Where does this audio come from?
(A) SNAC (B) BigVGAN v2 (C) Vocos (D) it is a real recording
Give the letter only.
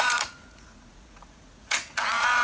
C